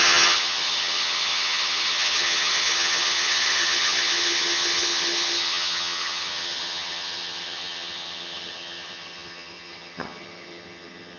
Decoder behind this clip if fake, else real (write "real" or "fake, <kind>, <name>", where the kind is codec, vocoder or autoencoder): fake, vocoder, HiFi-GAN